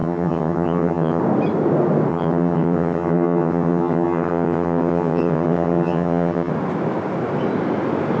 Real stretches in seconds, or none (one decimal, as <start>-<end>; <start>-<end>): 1.2-2.1; 6.5-8.2